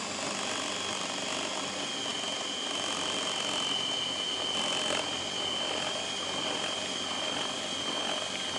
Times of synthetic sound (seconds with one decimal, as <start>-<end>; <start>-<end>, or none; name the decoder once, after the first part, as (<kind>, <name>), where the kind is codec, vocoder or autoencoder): none